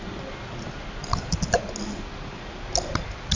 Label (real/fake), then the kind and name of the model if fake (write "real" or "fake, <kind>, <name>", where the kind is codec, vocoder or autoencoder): real